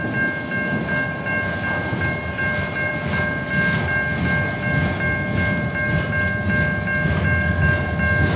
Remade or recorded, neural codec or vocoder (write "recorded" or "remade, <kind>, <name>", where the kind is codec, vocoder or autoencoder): recorded